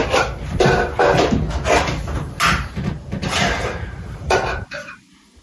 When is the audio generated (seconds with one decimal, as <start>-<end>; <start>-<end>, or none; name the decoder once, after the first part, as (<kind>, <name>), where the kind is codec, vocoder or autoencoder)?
3.2-5.4 (vocoder, BigVGAN v2)